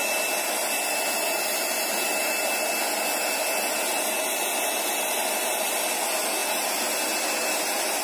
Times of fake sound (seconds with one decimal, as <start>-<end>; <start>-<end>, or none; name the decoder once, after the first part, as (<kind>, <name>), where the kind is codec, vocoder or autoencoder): none